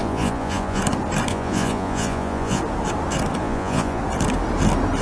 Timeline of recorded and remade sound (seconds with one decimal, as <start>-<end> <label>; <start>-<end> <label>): 0.0-0.8 remade; 0.8-1.3 recorded; 1.3-2.6 remade; 2.6-3.4 recorded; 3.4-4.0 remade; 4.0-5.0 recorded